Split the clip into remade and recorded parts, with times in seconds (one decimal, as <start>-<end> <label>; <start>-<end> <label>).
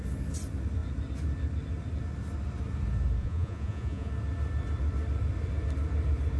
0.0-3.2 recorded; 3.2-4.1 remade; 4.1-6.4 recorded